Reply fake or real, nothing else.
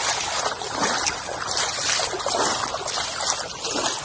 real